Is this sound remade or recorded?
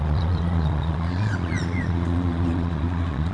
remade